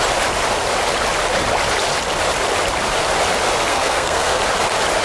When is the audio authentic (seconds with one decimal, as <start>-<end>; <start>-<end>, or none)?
0.0-3.7; 4.4-5.0